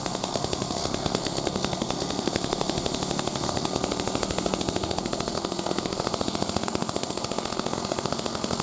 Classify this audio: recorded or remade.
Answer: remade